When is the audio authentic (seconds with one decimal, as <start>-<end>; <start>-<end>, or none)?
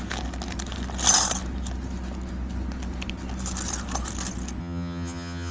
0.0-4.6